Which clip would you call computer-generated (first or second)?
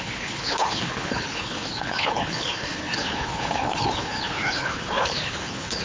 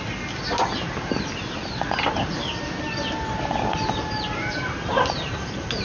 first